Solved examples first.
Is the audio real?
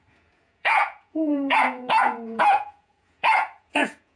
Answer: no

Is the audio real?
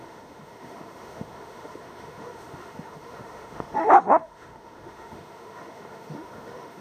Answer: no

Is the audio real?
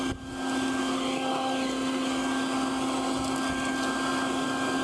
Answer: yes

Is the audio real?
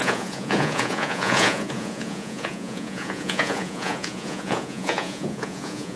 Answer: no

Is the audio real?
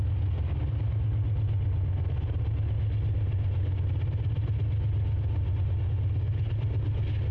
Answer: yes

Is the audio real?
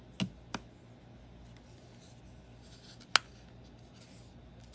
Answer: yes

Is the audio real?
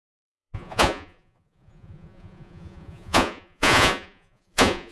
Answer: no